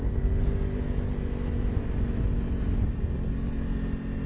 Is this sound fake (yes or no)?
no